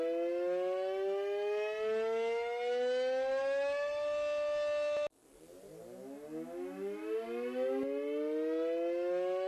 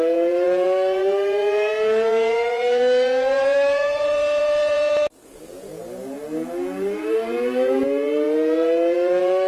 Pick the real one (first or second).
first